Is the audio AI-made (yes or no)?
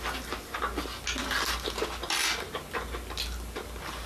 no